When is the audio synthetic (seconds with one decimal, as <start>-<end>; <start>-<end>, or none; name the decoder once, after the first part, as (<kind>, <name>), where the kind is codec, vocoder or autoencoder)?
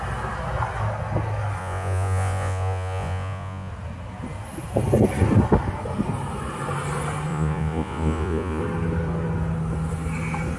1.6-3.7 (vocoder, Vocos); 7.3-8.6